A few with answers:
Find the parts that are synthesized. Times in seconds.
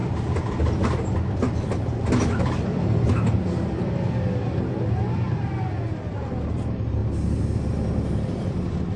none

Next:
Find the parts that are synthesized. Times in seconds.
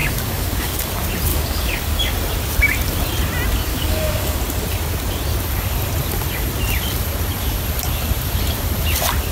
0.0-0.9 (codec, DAC); 1.3-2.0; 3.7-4.4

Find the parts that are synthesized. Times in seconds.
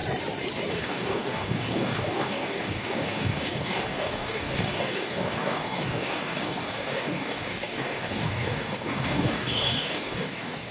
0.7-10.7 (codec, DAC)